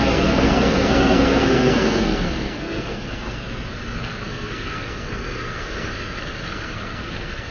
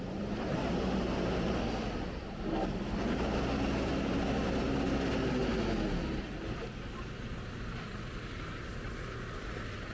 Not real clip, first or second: first